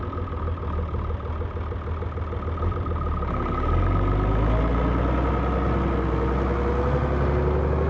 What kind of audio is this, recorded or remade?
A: recorded